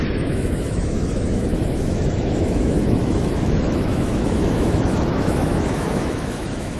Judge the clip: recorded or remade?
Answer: remade